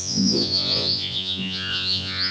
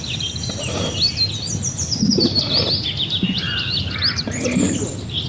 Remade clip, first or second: first